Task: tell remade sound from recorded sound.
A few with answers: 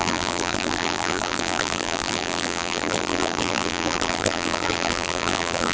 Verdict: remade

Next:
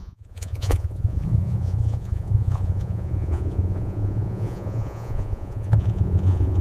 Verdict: remade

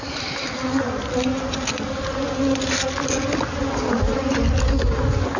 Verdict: recorded